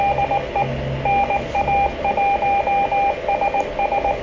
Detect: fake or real real